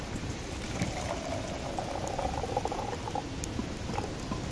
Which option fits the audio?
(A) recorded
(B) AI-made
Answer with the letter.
A